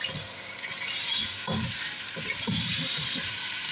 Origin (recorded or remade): remade